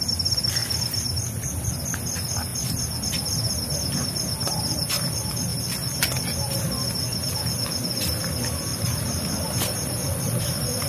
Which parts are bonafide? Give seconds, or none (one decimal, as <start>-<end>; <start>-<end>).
0.0-8.7; 10.4-10.9